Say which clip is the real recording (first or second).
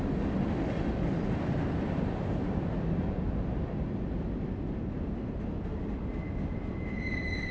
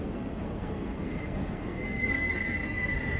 first